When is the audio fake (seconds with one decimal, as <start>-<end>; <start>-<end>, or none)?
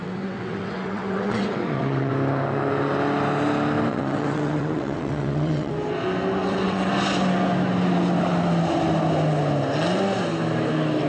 0.0-2.1; 3.9-5.7; 6.4-6.9